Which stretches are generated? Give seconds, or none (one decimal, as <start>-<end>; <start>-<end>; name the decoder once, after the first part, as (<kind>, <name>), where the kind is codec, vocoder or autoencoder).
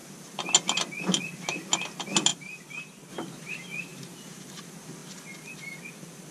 2.3-3.1 (vocoder, BigVGAN v2); 3.9-4.5